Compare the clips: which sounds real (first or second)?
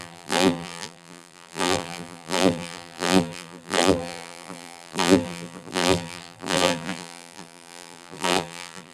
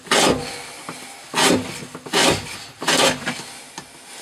second